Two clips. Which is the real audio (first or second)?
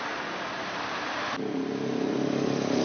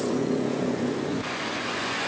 first